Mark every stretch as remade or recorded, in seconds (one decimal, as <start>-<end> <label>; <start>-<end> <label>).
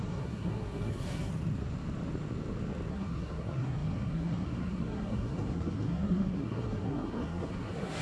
0.0-1.3 remade; 1.3-2.9 recorded; 2.9-8.0 remade